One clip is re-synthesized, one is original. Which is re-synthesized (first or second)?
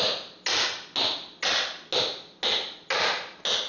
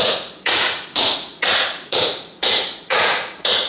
second